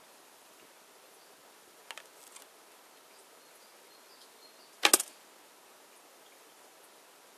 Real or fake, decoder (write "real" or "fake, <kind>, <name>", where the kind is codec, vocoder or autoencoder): real